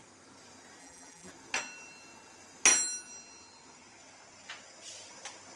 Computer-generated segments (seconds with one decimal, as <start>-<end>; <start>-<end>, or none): 0.8-1.3